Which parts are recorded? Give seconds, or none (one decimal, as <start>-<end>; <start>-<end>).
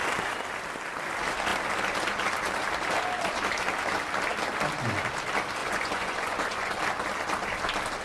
0.0-5.6; 6.8-8.0